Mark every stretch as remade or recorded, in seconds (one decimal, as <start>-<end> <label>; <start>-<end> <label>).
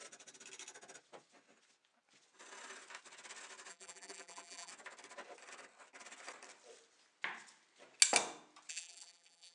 0.0-3.7 recorded; 3.7-4.7 remade; 4.7-8.7 recorded; 8.7-9.5 remade